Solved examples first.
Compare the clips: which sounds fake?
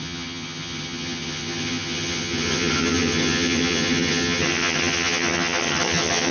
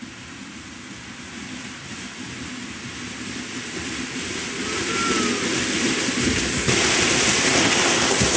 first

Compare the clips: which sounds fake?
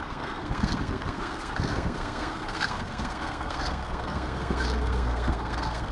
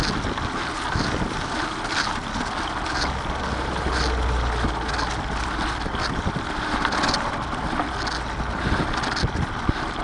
first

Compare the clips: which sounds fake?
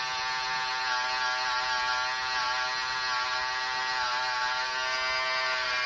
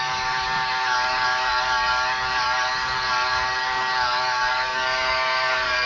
second